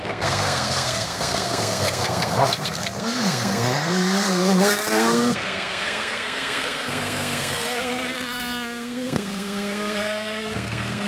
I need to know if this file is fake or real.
fake